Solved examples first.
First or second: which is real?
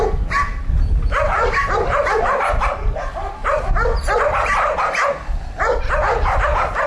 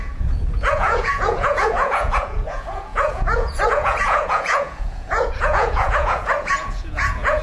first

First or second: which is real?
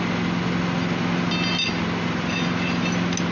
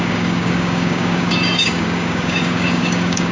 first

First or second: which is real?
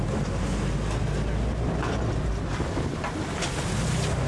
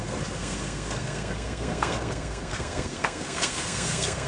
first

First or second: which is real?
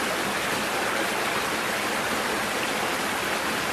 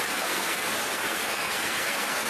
first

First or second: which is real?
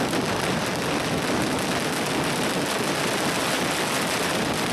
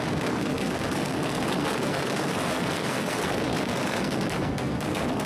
first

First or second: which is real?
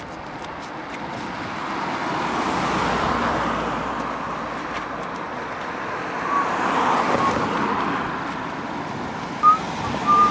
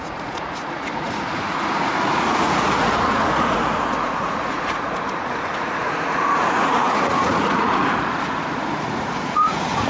first